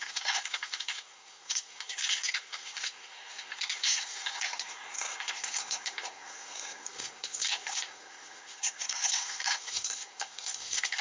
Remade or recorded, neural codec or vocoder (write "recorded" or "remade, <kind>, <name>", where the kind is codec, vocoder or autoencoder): remade, codec, SNAC